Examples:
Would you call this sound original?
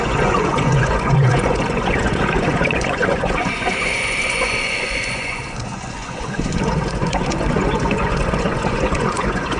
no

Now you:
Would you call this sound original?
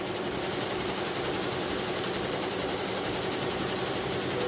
yes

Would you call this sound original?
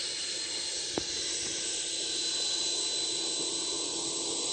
yes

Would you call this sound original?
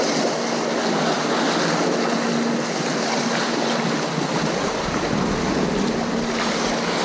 yes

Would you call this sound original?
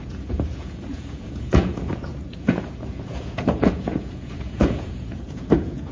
no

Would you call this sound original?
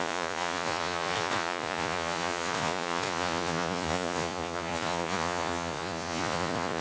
no